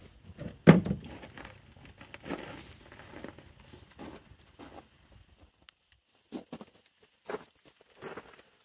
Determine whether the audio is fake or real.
real